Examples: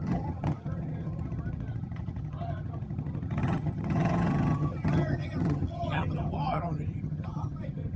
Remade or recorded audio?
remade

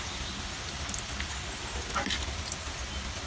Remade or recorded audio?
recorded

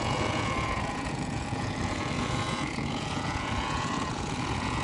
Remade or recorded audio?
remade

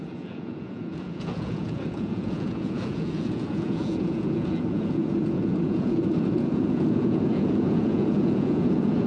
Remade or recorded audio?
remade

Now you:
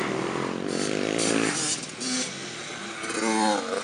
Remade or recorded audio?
recorded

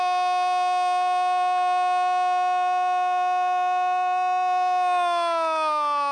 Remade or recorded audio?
recorded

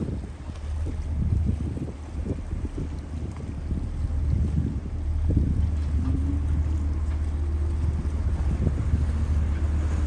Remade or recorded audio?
recorded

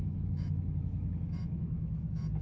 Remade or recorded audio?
remade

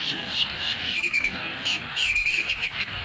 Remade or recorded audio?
remade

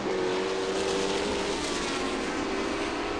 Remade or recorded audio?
recorded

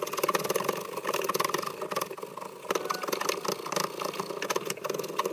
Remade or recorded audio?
recorded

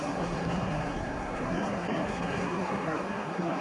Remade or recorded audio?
remade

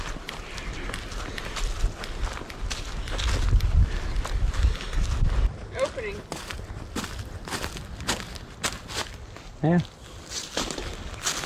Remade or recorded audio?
recorded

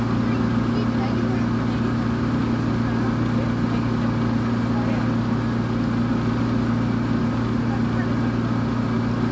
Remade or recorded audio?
recorded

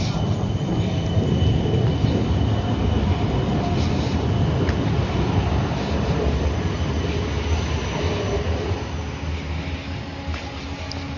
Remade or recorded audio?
recorded